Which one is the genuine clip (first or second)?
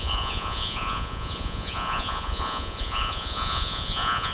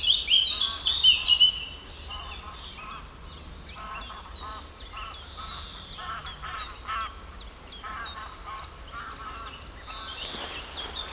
second